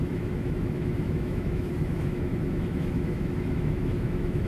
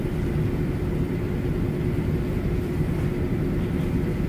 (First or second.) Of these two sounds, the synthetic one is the first